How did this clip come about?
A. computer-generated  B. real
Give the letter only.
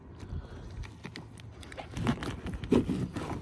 A